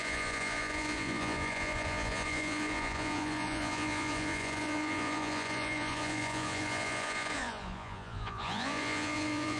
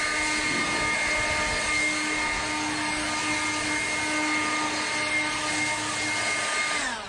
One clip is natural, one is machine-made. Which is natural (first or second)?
second